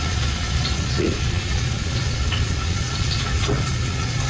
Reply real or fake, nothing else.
fake